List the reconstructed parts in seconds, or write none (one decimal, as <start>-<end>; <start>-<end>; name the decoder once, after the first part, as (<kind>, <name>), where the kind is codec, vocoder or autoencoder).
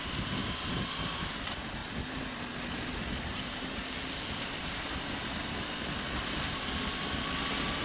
0.0-0.4 (vocoder, BigVGAN v2); 1.0-1.8; 2.7-3.8